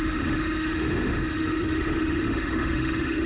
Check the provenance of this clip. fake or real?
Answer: fake